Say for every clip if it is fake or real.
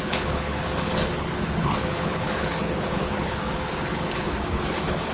fake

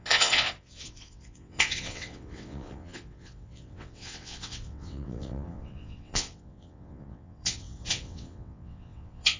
fake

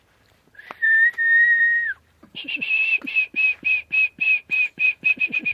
fake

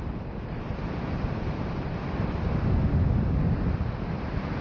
real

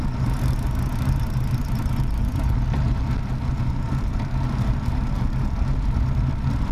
real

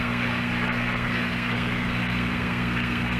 fake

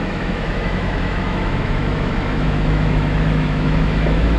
fake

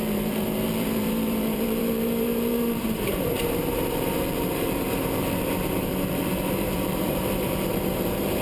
fake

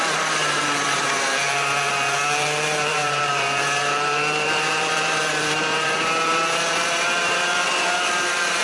fake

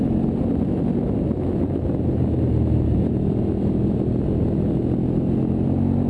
real